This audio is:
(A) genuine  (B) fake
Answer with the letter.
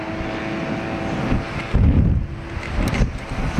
A